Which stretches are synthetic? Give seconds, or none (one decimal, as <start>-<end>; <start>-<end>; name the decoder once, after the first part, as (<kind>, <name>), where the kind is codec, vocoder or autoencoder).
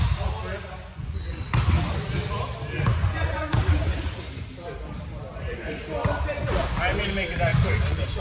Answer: 0.8-1.4 (vocoder, Vocos); 3.0-3.5; 5.3-5.8; 7.5-8.2